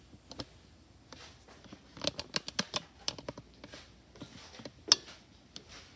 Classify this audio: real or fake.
real